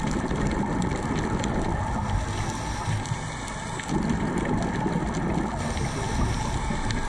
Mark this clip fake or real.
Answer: real